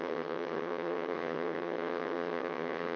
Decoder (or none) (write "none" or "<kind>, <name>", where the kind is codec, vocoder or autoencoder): vocoder, HiFi-GAN